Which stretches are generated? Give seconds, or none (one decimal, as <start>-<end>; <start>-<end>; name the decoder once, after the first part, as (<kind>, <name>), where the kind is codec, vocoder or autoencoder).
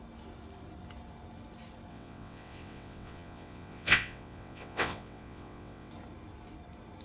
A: 1.9-5.9 (vocoder, WaveNeXt)